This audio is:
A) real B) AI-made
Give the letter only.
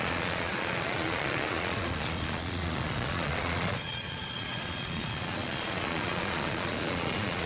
B